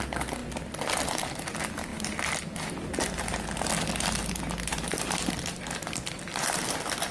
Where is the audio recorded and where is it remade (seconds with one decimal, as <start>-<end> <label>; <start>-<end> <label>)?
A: 0.0-1.9 recorded; 1.9-2.4 remade; 2.4-4.7 recorded; 4.7-5.8 remade; 5.8-7.1 recorded